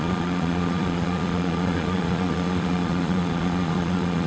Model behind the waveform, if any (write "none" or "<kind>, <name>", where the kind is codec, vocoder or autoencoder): vocoder, Vocos